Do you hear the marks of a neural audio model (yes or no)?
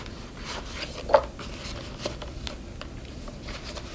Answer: no